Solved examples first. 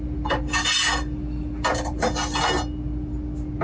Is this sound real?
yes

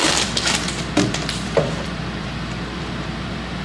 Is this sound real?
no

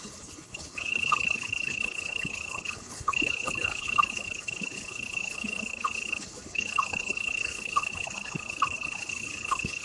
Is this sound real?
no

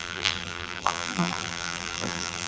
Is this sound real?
no